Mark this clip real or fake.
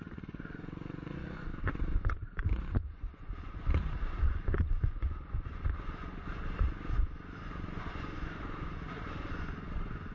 fake